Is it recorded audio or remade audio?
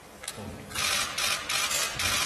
recorded